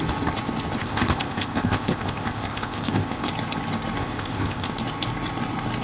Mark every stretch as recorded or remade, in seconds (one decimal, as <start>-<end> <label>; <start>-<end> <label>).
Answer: 0.0-0.8 recorded; 0.8-3.3 remade; 3.3-4.0 recorded; 4.0-4.7 remade; 4.7-5.8 recorded